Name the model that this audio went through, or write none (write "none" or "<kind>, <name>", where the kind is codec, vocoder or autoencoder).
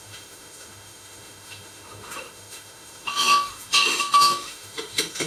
autoencoder, DAC-VAE